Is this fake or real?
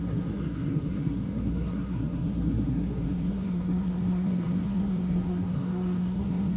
fake